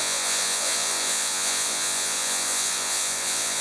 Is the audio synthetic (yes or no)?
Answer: yes